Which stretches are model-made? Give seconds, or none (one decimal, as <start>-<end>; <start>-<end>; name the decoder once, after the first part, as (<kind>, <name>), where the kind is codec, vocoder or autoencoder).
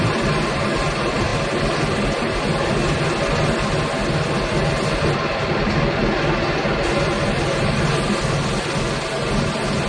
6.8-8.1 (vocoder, BigVGAN v2)